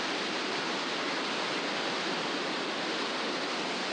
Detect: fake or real real